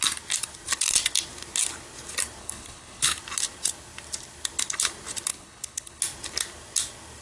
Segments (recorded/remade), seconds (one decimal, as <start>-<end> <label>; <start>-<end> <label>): 0.0-2.4 recorded; 2.4-3.2 remade; 3.2-5.3 recorded; 5.3-6.0 remade; 6.0-7.2 recorded